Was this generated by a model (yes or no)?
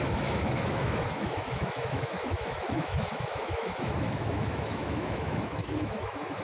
yes